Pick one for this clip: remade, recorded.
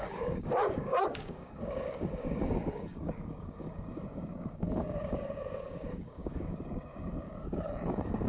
remade